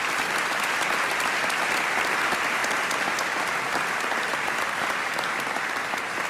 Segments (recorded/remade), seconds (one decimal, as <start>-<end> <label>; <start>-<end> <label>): 0.0-6.3 recorded